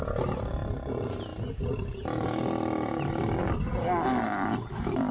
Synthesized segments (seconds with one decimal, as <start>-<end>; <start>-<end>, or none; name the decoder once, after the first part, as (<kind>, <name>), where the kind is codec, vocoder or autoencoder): none